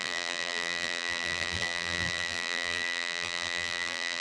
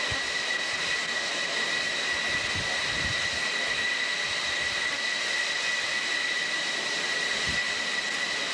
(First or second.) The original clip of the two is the second